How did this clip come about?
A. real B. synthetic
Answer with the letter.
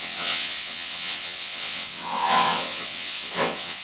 B